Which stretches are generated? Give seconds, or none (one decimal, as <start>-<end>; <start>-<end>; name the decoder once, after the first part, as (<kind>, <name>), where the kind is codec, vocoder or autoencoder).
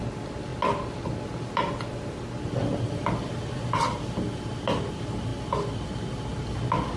none